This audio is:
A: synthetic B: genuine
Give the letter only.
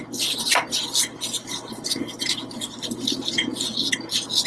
B